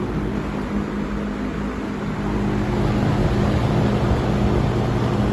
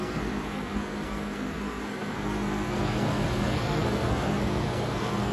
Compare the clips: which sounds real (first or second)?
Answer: first